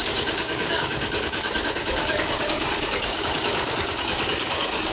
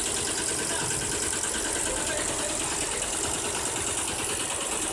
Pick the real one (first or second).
second